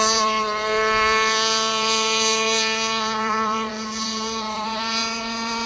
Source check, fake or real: fake